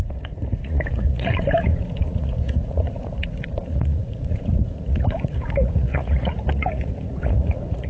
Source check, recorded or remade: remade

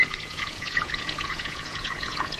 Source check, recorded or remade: remade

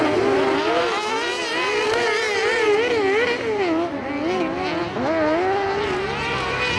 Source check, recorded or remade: recorded